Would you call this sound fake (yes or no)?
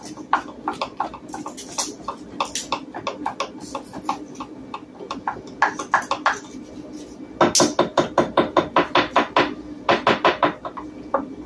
no